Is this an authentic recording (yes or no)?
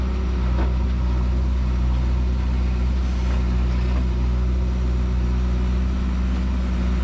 yes